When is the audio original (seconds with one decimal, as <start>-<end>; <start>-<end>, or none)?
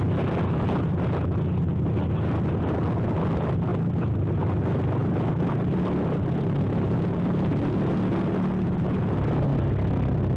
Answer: 0.0-10.4